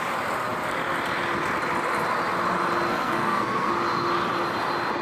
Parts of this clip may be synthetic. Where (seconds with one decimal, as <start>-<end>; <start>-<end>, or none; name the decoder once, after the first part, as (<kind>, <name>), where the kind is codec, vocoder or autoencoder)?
2.9-3.7 (codec, SNAC)